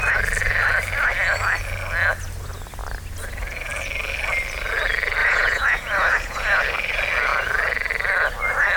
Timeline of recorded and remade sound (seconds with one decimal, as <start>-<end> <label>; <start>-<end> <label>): 0.0-5.2 recorded; 5.2-6.6 remade; 6.6-8.8 recorded